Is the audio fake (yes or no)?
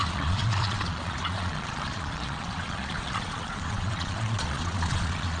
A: yes